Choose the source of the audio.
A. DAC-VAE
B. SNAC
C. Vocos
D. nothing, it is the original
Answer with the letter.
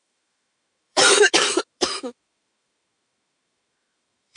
A